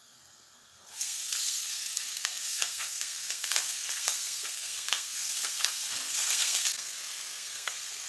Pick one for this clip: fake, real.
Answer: fake